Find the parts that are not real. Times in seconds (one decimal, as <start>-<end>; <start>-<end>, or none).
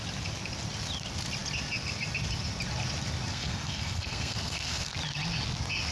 3.3-4.9